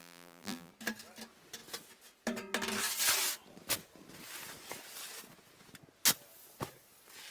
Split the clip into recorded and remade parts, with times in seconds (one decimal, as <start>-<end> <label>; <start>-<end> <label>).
0.0-0.7 remade; 0.7-7.3 recorded